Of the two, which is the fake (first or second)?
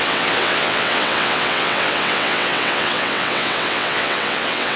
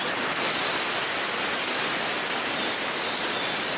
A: first